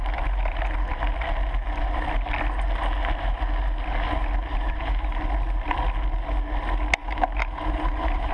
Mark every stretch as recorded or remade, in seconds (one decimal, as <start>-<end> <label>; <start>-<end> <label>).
0.0-4.5 recorded; 4.5-5.2 remade; 5.2-7.0 recorded; 7.0-8.3 remade